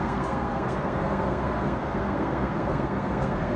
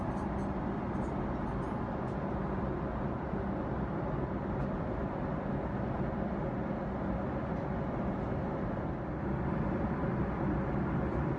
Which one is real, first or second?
second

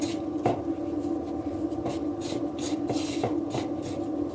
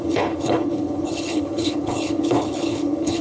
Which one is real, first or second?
first